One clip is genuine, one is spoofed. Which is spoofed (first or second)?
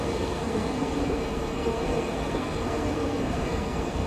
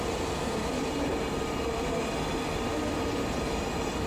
first